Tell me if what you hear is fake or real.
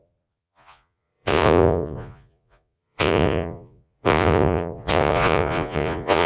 fake